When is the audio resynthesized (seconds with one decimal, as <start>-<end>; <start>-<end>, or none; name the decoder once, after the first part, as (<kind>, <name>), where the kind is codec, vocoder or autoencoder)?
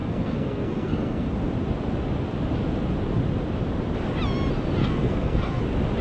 0.0-1.3 (codec, SNAC); 4.8-5.6